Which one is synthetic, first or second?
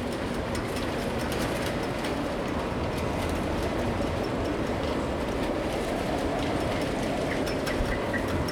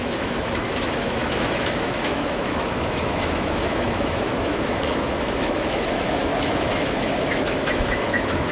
second